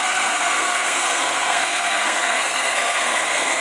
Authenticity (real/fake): fake